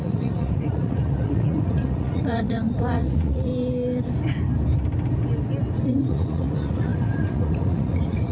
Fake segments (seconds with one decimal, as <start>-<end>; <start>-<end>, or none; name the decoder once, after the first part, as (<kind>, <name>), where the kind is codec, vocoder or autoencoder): 0.0-3.5 (vocoder, Vocos); 5.9-8.3